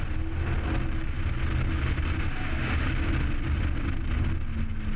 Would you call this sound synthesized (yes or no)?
no